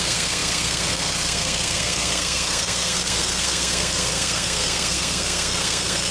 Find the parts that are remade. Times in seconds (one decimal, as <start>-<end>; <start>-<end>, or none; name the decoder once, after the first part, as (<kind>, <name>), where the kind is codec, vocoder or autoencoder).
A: 0.0-6.1 (codec, SNAC)

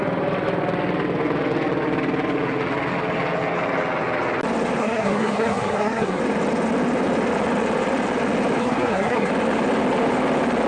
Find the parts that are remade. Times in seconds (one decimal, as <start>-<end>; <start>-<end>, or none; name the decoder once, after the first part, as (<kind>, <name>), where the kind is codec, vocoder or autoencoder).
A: 4.8-6.2 (codec, SNAC); 8.6-9.3

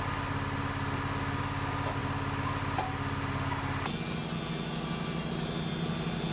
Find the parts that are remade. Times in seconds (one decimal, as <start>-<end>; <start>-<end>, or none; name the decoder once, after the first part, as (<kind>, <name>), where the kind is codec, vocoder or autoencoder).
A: none